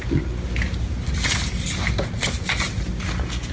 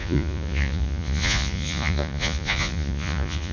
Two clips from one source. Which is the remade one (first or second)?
second